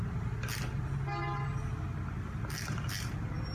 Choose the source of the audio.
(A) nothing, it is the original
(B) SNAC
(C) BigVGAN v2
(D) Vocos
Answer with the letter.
A